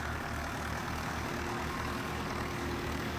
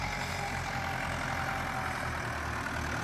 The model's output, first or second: first